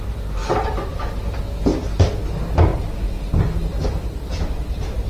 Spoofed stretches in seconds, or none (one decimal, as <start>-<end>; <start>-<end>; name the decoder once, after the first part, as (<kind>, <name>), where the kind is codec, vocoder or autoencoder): 0.4-0.9 (vocoder, BigVGAN v2); 4.2-5.1